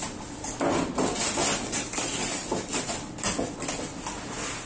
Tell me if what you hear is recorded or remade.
recorded